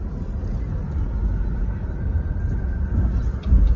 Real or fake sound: real